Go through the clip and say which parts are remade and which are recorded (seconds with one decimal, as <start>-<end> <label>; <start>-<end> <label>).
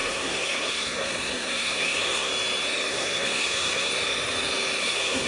0.0-2.3 remade; 2.3-2.9 recorded; 2.9-3.9 remade; 3.9-4.8 recorded; 4.8-5.3 remade